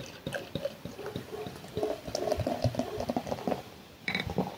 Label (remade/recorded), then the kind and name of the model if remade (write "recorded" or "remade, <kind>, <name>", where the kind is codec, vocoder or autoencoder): remade, vocoder, BigVGAN v2